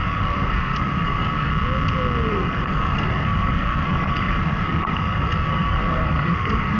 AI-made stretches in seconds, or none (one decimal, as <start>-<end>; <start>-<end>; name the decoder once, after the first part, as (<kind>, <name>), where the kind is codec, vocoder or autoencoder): 0.0-1.5 (codec, SNAC); 2.3-6.8